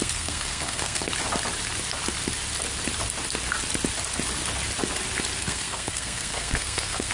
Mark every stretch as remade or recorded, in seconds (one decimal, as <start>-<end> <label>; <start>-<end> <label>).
0.0-1.1 remade; 1.1-5.4 recorded; 5.4-7.1 remade